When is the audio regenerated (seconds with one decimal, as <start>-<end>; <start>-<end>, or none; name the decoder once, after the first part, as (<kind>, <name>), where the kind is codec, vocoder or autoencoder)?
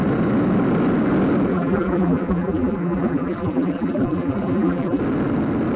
1.5-5.0 (vocoder, BigVGAN v2)